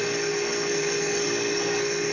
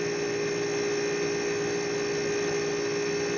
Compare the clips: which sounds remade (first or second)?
first